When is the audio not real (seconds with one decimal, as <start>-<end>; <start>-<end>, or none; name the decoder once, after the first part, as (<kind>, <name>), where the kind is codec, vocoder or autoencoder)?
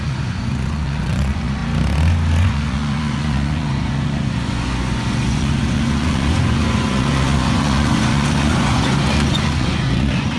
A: 0.0-1.6 (vocoder, Vocos); 2.4-10.4